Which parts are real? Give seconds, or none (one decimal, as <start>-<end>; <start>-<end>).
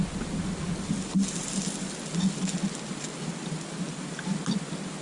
0.0-5.0